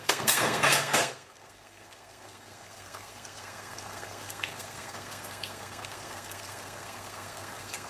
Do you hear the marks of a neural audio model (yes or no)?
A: yes